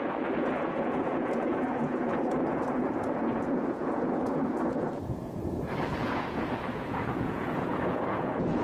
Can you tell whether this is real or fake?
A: fake